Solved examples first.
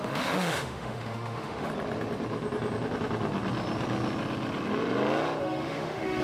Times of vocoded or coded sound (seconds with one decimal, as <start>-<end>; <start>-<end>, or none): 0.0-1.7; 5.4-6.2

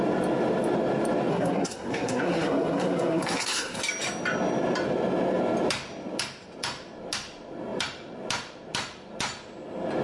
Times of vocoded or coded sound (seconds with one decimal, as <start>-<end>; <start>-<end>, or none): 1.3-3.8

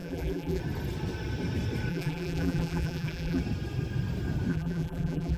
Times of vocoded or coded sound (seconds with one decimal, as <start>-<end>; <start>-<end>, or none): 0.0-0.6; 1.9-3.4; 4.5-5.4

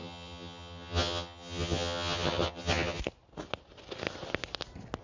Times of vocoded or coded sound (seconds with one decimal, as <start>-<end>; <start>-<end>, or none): 0.0-3.0